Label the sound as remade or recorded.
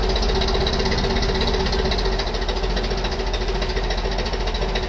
recorded